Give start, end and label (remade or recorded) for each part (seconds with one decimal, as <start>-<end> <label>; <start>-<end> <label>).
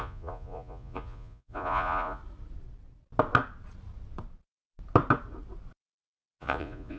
0.0-2.2 remade; 2.2-6.4 recorded; 6.4-7.0 remade